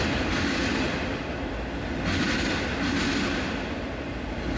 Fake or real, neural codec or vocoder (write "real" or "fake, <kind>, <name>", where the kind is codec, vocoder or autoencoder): real